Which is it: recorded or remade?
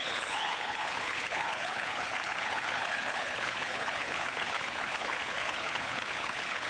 remade